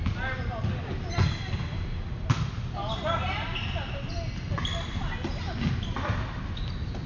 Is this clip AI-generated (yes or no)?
no